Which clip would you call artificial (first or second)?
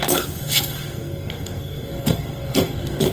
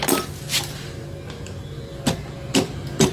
first